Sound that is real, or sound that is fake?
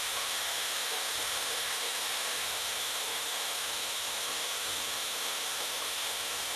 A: fake